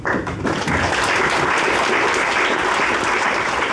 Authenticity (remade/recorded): recorded